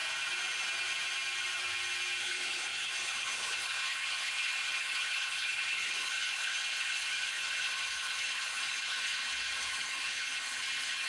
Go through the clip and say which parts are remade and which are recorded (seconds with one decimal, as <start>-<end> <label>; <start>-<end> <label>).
0.0-2.2 recorded; 2.2-11.1 remade